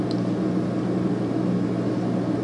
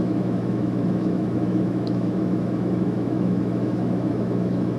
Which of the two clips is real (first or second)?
first